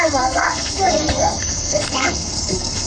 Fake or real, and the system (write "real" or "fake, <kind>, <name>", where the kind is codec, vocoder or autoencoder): fake, codec, SNAC